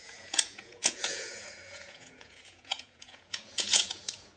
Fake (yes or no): yes